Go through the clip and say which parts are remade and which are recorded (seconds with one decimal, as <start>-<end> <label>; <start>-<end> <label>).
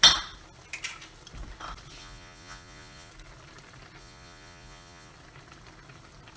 0.0-2.0 recorded; 2.0-3.1 remade; 3.1-4.0 recorded; 4.0-5.1 remade; 5.1-6.4 recorded